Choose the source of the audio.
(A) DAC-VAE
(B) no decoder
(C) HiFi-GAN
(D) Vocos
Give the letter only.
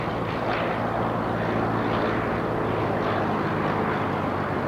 B